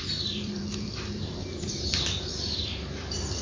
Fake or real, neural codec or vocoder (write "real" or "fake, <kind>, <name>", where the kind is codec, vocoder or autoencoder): fake, vocoder, BigVGAN v2